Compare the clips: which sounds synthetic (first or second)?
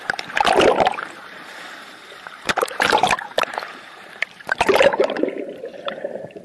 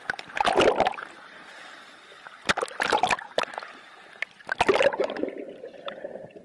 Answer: first